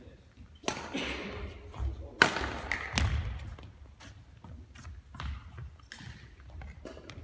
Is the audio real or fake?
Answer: real